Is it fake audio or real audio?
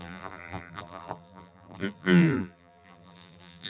fake